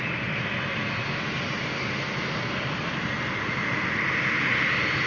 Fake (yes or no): no